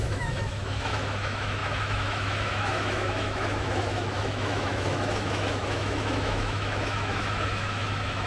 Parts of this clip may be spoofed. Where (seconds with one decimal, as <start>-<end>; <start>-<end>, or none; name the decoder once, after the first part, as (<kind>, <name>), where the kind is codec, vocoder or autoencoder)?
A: 0.0-8.3 (autoencoder, DAC-VAE)